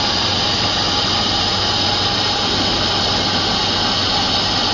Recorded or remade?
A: recorded